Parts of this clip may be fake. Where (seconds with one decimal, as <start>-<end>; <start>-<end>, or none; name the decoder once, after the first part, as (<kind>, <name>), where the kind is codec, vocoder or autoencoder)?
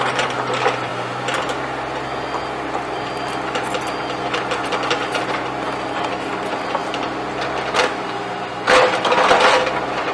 none